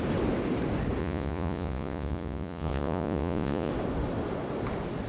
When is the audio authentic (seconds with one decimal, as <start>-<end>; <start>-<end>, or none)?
0.0-1.0; 3.7-5.1